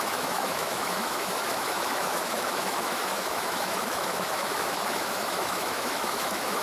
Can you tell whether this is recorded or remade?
remade